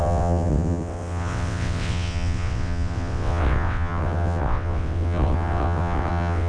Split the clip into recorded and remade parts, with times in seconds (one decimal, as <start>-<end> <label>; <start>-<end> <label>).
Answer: 0.0-6.5 remade